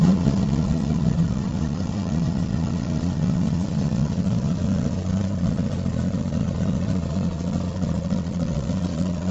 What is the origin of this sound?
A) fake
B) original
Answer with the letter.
A